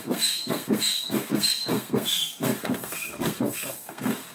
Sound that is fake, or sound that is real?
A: fake